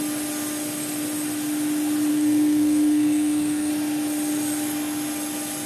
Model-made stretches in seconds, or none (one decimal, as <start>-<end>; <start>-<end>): 2.1-3.7